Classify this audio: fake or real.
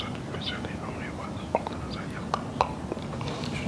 real